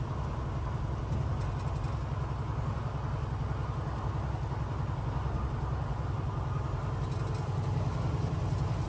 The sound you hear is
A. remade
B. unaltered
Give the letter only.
B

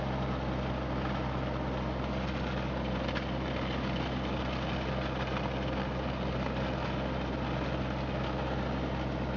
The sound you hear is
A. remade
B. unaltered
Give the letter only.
B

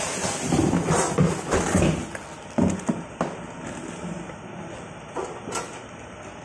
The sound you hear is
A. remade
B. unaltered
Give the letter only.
B